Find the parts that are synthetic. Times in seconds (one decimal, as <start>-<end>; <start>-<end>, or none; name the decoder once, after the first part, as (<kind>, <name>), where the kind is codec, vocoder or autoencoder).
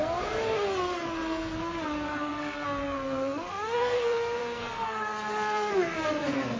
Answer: 0.0-6.6 (codec, SNAC)